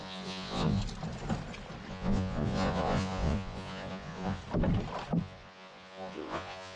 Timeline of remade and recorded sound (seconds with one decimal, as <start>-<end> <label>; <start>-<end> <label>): 0.0-0.8 remade; 0.8-1.9 recorded; 1.9-4.4 remade; 4.4-5.2 recorded; 5.2-6.8 remade